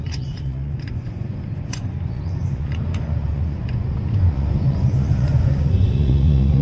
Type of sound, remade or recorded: remade